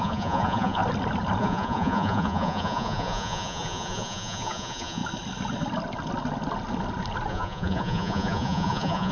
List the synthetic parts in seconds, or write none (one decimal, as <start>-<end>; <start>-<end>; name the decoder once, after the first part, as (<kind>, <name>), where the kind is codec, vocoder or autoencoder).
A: 0.0-0.8 (vocoder, Vocos); 1.4-5.0; 7.3-9.1